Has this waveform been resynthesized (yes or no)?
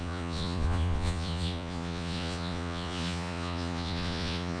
yes